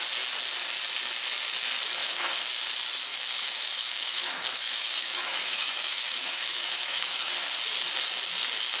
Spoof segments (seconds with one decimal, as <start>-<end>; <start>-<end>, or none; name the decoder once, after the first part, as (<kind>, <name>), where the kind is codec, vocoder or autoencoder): 2.0-2.5 (autoencoder, DAC-VAE); 3.1-7.3